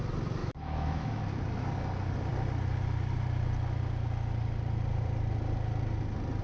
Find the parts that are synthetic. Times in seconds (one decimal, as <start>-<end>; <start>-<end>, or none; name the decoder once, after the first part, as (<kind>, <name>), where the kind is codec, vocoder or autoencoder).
0.4-1.2 (autoencoder, DAC-VAE)